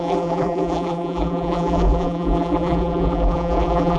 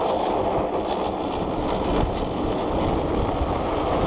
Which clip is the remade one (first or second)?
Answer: first